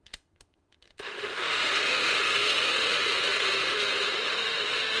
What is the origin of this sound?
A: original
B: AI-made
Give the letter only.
B